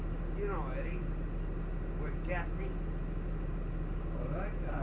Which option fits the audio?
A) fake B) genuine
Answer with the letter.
B